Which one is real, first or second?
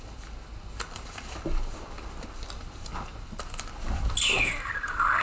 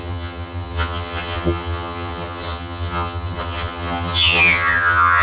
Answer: first